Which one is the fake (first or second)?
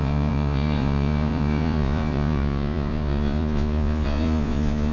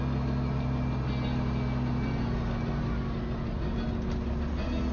first